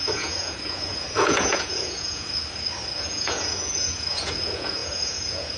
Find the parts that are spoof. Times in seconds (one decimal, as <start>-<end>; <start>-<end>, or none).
0.0-2.4; 3.0-5.6